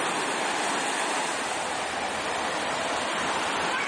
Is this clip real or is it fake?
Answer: real